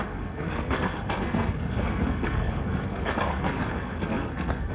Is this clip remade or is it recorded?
remade